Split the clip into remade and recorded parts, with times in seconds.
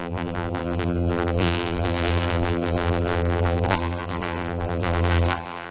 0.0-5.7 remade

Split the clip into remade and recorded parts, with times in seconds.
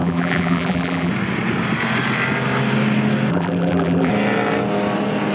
0.0-1.1 remade; 1.1-3.3 recorded; 3.3-4.1 remade; 4.1-5.3 recorded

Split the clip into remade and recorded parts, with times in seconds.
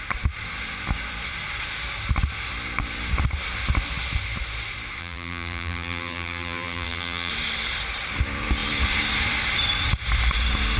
0.0-5.0 recorded; 5.0-7.3 remade; 7.3-10.8 recorded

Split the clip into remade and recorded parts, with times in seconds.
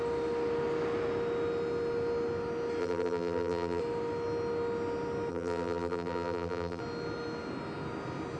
0.0-2.8 recorded; 2.8-3.8 remade; 3.8-5.3 recorded; 5.3-6.8 remade; 6.8-8.4 recorded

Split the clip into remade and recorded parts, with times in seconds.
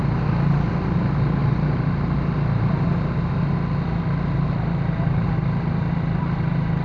0.0-6.8 recorded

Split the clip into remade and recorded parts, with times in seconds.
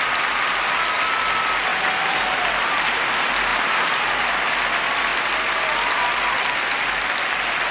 0.0-1.7 recorded; 1.7-3.0 remade; 3.0-3.5 recorded; 3.5-4.0 remade; 4.0-7.7 recorded